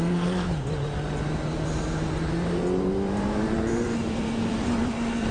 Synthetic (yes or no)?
yes